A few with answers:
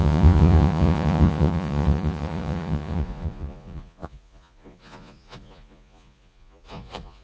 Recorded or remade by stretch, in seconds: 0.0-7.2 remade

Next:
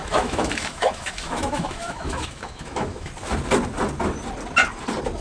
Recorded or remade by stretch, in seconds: 0.0-3.1 remade; 3.1-5.2 recorded